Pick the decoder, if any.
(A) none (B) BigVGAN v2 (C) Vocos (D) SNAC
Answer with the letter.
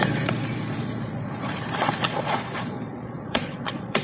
C